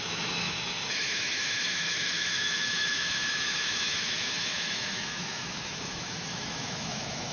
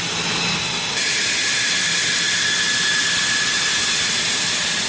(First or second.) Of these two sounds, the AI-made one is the first